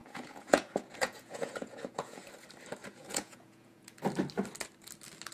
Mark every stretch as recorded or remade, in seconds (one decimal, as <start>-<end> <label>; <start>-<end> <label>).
0.0-2.2 remade; 2.2-2.8 recorded; 2.8-4.0 remade; 4.0-5.3 recorded